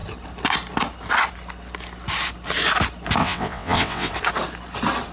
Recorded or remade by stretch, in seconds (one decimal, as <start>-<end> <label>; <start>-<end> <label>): 0.0-3.2 recorded; 3.2-4.1 remade; 4.1-5.1 recorded